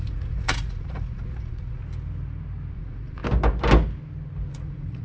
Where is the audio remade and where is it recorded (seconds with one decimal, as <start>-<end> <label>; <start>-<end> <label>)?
0.0-1.8 remade; 1.8-2.7 recorded; 2.7-3.2 remade; 3.2-4.5 recorded; 4.5-5.0 remade